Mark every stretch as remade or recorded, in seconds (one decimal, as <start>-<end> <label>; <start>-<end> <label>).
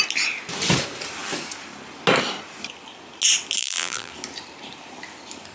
0.0-3.6 recorded; 3.6-4.1 remade; 4.1-5.5 recorded